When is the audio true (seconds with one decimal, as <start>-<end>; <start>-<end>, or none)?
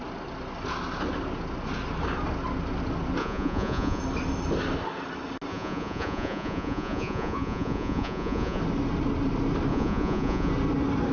0.0-3.2; 4.0-5.5; 8.6-9.7; 10.5-11.1